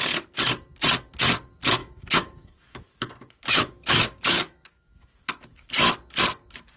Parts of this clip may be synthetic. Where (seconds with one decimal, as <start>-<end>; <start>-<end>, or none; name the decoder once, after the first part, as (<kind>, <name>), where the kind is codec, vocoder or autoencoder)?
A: 1.8-5.9 (autoencoder, DAC-VAE)